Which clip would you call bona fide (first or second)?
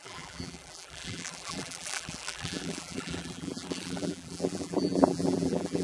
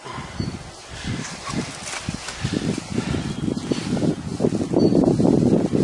second